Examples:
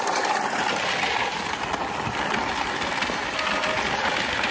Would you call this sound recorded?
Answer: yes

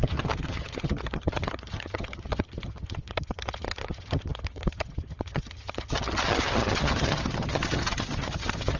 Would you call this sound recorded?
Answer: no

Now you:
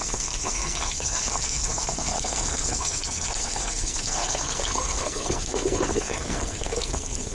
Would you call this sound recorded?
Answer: no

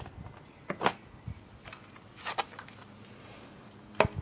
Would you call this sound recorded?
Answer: yes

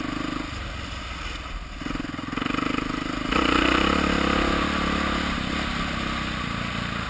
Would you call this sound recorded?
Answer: yes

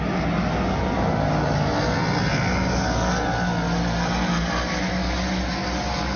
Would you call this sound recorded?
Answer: yes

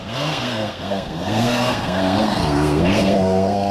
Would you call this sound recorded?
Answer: no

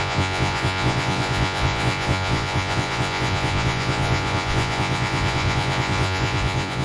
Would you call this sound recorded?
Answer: no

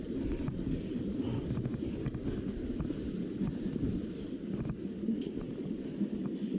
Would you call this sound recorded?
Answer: yes